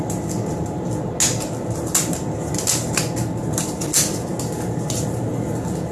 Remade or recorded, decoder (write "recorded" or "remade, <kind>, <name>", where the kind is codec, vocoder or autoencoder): recorded